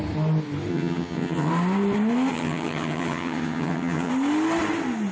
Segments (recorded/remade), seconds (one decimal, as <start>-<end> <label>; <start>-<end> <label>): 0.0-0.7 recorded; 0.7-1.5 remade; 1.5-2.3 recorded; 2.3-4.1 remade; 4.1-5.1 recorded